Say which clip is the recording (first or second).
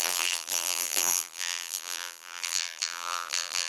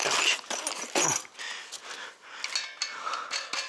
second